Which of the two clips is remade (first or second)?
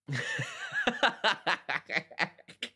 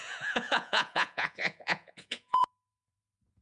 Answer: second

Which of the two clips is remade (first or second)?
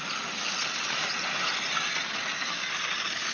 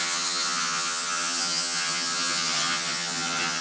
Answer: second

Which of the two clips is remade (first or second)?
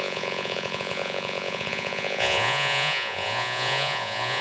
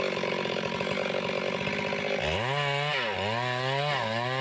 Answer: first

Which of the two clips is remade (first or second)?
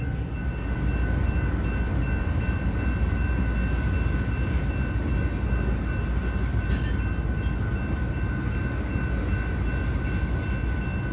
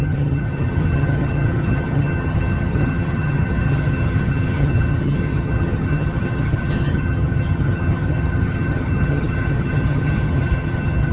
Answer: second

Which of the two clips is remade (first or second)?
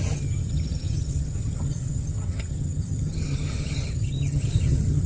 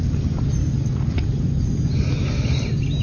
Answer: first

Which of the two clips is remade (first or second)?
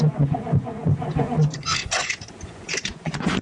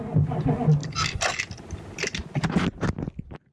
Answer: first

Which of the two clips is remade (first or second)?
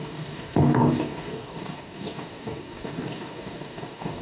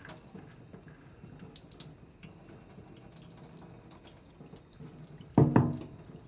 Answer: first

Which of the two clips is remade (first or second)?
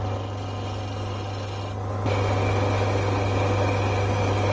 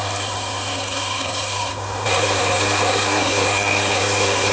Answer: second